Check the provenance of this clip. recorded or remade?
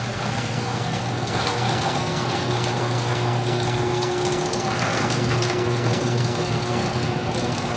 remade